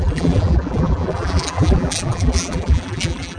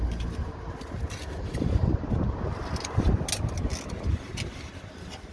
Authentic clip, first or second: second